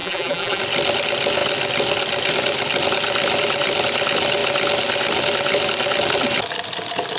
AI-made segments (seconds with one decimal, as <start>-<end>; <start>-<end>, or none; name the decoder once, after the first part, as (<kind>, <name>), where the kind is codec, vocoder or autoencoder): 0.0-0.6 (vocoder, BigVGAN v2)